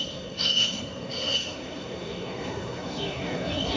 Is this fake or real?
fake